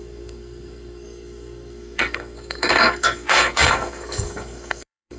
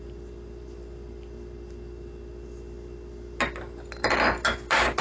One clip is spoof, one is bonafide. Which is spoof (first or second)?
first